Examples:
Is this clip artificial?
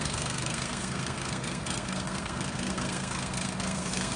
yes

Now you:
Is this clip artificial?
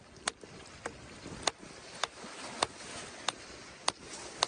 no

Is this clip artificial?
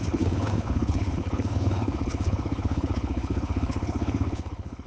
yes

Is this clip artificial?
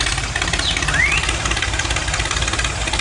no